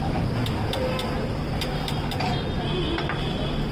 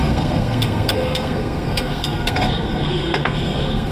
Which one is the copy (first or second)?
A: second